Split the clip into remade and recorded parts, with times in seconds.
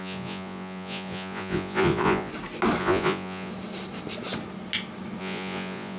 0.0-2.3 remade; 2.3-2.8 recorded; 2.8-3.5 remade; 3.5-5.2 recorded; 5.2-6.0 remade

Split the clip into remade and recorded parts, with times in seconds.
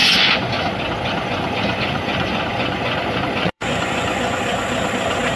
0.0-0.5 remade; 0.5-1.2 recorded; 1.2-4.4 remade; 4.4-5.4 recorded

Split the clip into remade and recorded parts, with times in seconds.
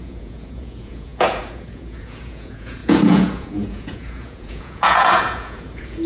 0.0-6.1 remade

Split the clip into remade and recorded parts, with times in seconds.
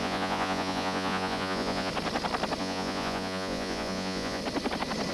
0.0-1.9 remade; 1.9-2.6 recorded; 2.6-4.4 remade; 4.4-5.1 recorded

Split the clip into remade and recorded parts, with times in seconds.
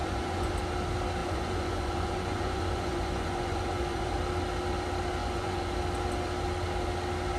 0.0-0.5 remade; 0.5-1.2 recorded; 1.2-4.1 remade; 4.1-5.2 recorded; 5.2-5.7 remade; 5.7-7.4 recorded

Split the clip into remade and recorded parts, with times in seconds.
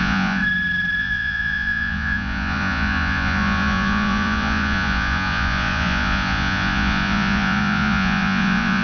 0.0-0.4 remade; 0.4-1.0 recorded; 1.0-8.8 remade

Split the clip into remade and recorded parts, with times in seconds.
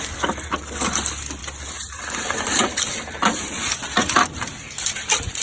0.0-5.4 recorded